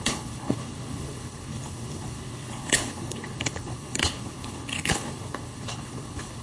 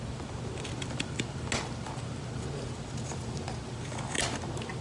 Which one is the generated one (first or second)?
first